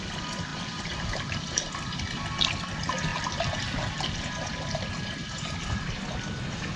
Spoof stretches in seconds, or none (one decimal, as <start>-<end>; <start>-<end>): 0.5-1.8; 3.1-5.6